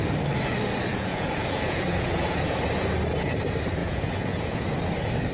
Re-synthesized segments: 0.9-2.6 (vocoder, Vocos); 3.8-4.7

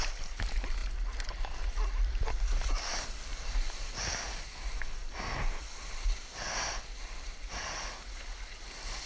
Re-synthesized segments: none

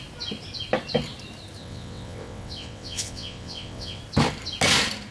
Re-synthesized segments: 1.6-4.0 (vocoder, WaveNeXt)

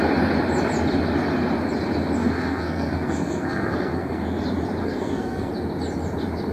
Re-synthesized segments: 2.2-4.2 (codec, SNAC); 4.8-5.5

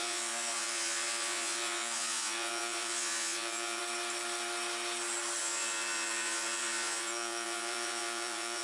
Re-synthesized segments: 0.0-3.8 (vocoder, Vocos); 5.4-8.6

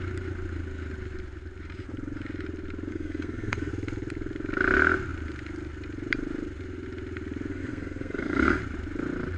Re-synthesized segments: 2.9-3.7 (codec, SNAC); 7.5-8.6

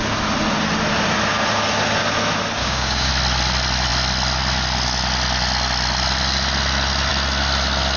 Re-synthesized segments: 2.6-3.1 (codec, DAC)